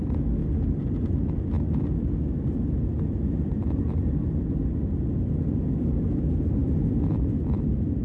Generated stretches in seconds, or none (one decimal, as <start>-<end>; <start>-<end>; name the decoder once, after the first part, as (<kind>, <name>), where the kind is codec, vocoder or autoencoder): 0.4-1.4 (vocoder, BigVGAN v2); 3.6-4.7; 6.6-8.0